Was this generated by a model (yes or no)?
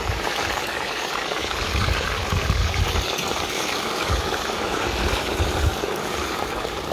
yes